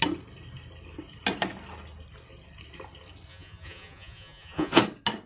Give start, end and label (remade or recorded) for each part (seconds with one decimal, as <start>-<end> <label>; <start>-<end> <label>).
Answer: 0.0-3.3 recorded; 3.3-4.8 remade; 4.8-5.3 recorded